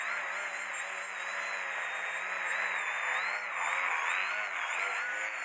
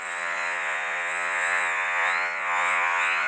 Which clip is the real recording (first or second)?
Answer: first